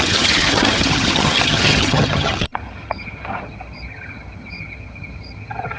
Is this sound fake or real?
fake